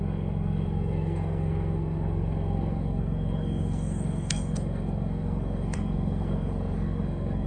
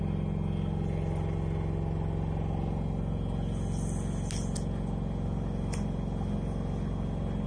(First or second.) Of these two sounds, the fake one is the first